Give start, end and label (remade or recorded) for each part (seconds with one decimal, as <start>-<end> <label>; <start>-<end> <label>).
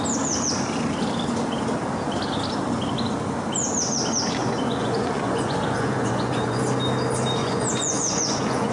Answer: 0.0-4.4 recorded; 4.4-6.6 remade; 6.6-7.4 recorded; 7.4-8.7 remade